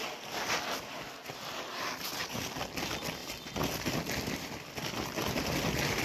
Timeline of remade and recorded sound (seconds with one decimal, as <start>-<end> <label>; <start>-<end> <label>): 0.0-6.0 recorded